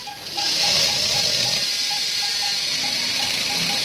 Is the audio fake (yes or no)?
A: yes